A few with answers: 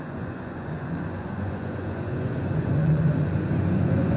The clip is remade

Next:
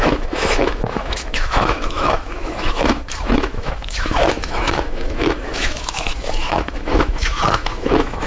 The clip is remade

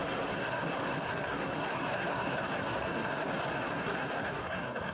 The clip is remade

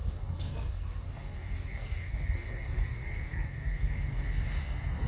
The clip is remade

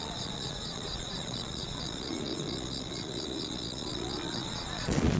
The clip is remade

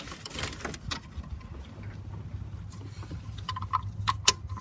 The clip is recorded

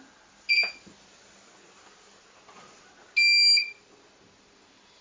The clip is recorded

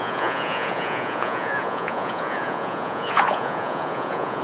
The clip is remade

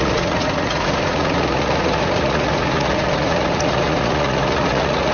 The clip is remade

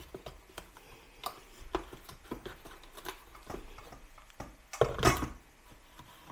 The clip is recorded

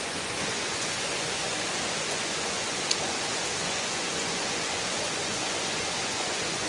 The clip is remade